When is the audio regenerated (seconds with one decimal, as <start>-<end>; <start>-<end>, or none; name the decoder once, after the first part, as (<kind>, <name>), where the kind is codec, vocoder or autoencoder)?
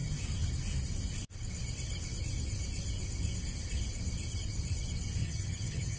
5.2-6.0 (vocoder, HiFi-GAN)